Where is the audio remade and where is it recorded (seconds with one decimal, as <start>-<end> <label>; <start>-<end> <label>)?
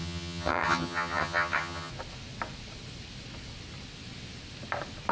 0.0-1.9 remade; 1.9-5.1 recorded